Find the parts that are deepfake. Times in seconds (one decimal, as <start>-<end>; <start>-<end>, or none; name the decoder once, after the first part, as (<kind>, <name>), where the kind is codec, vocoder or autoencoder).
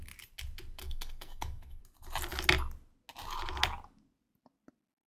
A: 0.8-1.8 (codec, SNAC)